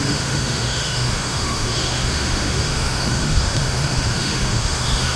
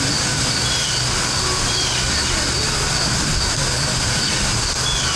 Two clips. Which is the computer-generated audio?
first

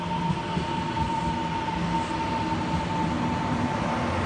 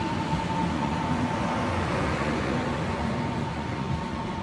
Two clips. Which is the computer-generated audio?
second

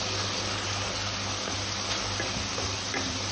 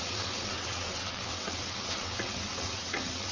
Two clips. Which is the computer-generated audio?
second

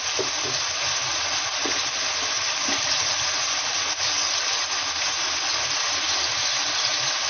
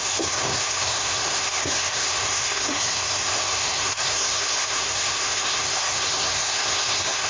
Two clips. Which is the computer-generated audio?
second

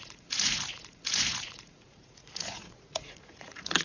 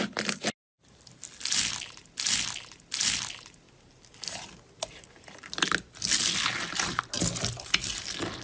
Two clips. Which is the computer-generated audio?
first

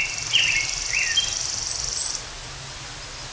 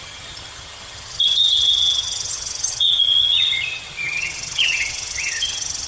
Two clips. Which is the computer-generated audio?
second